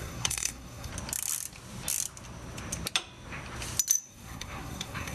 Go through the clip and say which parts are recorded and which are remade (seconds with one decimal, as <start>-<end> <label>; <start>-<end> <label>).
0.0-0.9 remade; 0.9-4.0 recorded; 4.0-5.1 remade